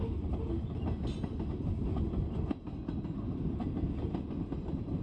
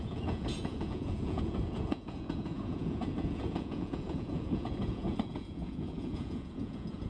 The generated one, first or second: second